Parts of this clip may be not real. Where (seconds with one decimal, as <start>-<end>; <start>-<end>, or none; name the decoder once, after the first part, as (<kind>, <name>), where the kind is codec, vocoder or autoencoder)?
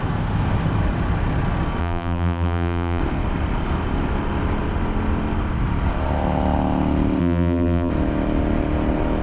1.8-3.0 (vocoder, BigVGAN v2); 7.2-7.9